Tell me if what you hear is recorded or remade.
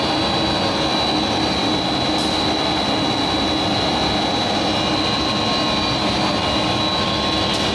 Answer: recorded